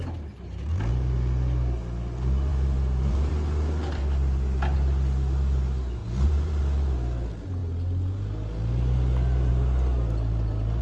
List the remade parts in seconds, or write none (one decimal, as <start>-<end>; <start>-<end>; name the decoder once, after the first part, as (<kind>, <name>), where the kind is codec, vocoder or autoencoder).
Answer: 2.5-3.3 (vocoder, BigVGAN v2); 6.0-6.6